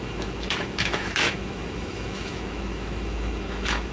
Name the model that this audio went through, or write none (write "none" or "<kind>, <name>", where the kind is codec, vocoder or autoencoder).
autoencoder, DAC-VAE